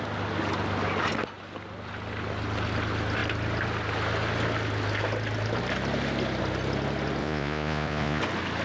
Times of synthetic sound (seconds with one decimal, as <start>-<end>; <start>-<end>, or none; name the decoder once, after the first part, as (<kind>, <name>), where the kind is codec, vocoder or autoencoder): 7.2-8.2 (vocoder, Vocos)